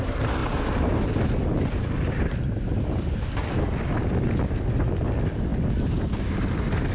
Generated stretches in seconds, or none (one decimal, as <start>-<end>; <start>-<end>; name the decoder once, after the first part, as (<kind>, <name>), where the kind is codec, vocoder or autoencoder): 0.4-3.9 (vocoder, BigVGAN v2)